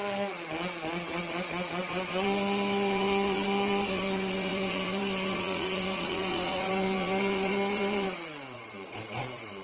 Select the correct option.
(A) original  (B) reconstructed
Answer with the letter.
B